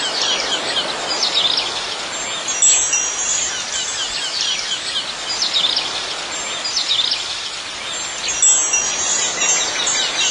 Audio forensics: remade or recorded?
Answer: recorded